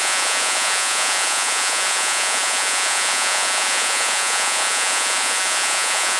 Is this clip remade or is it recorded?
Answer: remade